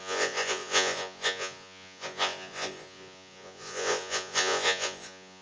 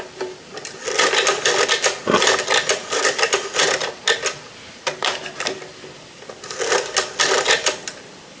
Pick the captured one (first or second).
second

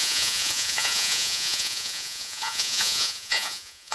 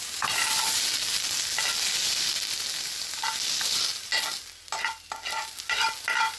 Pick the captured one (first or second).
second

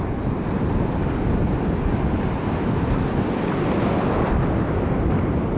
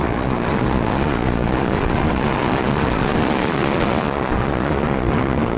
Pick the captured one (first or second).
first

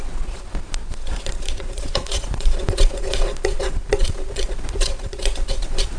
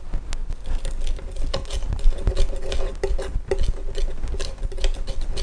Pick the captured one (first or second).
second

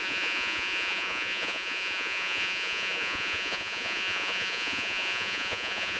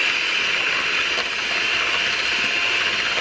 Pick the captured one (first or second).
second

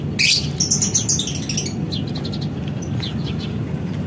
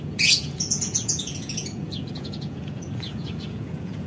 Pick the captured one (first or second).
first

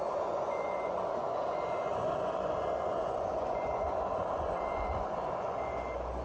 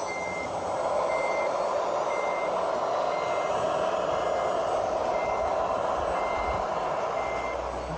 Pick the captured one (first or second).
second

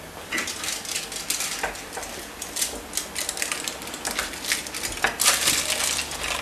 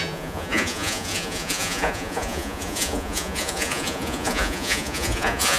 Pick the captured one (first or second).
first